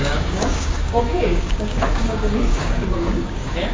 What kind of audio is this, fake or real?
fake